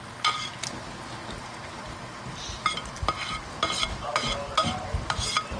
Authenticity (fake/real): real